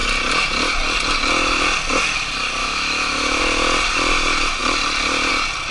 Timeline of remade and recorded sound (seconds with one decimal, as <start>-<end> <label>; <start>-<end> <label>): 0.0-2.6 recorded; 2.6-3.4 remade; 3.4-5.7 recorded